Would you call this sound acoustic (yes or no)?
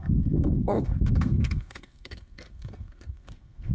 no